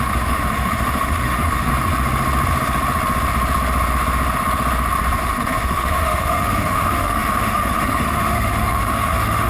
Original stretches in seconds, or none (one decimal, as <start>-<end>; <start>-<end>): 1.7-5.2